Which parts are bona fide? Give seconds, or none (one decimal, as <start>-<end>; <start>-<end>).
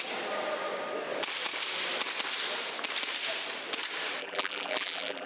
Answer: 0.0-4.2